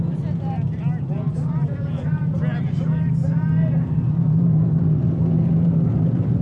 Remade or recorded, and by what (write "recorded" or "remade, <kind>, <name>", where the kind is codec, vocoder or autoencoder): recorded